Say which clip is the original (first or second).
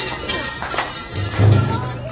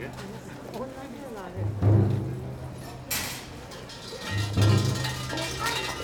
second